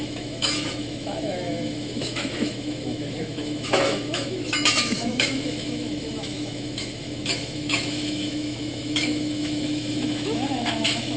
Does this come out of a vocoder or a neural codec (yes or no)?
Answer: yes